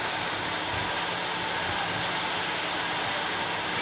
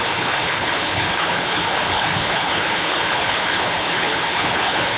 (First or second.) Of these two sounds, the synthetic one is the second